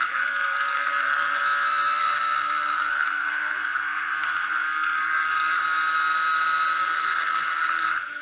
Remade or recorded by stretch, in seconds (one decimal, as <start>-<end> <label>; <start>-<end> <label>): 0.0-1.4 remade; 1.4-2.0 recorded; 2.0-5.6 remade; 5.6-6.8 recorded; 6.8-8.2 remade